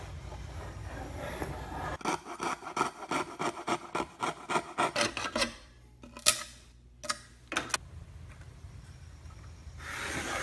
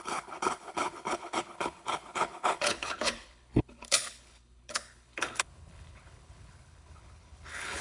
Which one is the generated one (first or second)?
second